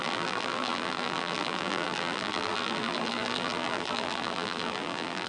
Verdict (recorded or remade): remade